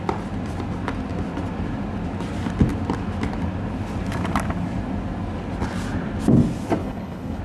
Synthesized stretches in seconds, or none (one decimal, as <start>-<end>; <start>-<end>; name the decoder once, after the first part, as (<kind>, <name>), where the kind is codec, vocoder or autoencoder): 6.8-7.4 (codec, HILCodec)